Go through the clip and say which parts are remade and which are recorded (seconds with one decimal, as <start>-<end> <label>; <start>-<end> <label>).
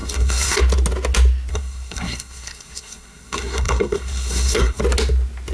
0.0-0.6 remade; 0.6-1.5 recorded; 1.5-4.8 remade; 4.8-5.5 recorded